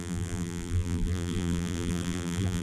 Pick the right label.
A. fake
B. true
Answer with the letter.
A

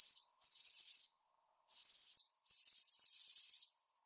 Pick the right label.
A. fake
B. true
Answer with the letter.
A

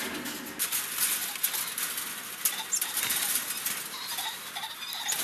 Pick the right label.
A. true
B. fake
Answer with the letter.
A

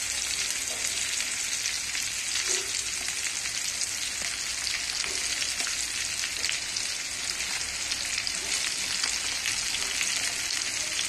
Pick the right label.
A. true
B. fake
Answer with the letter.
A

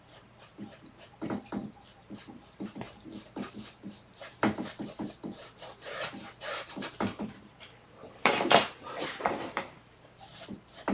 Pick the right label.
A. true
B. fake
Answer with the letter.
B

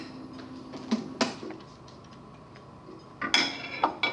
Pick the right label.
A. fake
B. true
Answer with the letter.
B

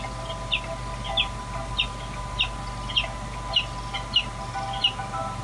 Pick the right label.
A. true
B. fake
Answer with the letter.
A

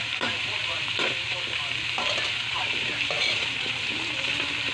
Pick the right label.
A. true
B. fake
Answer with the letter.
B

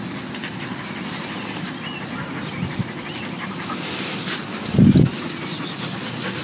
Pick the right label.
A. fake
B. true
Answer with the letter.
A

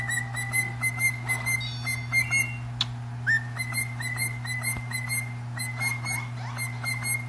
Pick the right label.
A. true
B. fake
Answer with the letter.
A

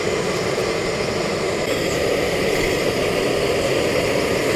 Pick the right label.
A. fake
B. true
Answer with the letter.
B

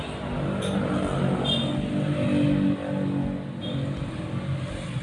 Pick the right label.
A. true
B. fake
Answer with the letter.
A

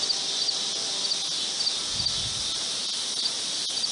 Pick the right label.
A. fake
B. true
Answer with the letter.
B